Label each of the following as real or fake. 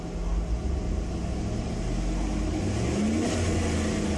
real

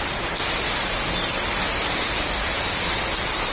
real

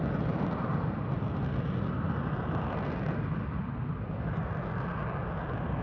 real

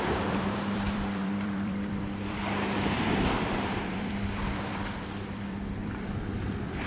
fake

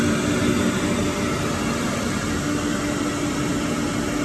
real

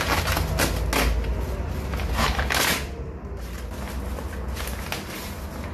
real